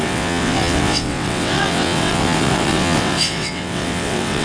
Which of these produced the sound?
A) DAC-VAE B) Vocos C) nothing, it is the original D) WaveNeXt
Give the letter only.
D